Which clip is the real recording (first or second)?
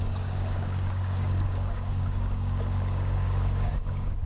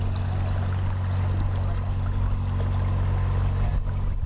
second